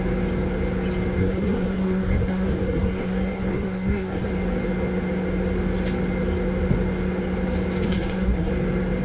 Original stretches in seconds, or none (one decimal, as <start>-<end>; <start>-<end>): 0.0-1.2; 4.3-7.9; 8.5-9.0